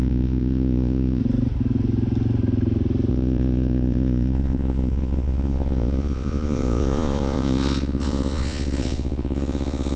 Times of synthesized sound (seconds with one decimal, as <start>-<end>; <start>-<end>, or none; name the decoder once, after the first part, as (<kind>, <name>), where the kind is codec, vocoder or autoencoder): 0.0-1.2 (vocoder, Vocos); 3.1-10.0